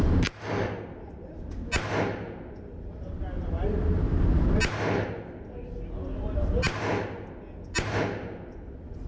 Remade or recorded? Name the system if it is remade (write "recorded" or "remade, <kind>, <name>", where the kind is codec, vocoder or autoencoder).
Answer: recorded